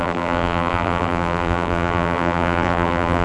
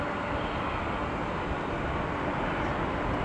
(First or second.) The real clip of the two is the second